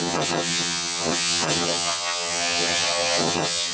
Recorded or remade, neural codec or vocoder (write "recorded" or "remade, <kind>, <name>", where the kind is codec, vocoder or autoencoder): remade, vocoder, HiFi-GAN